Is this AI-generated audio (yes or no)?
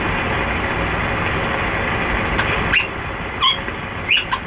no